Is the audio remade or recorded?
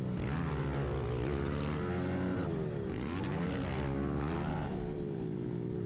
recorded